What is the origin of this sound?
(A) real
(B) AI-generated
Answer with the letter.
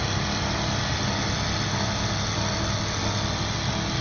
A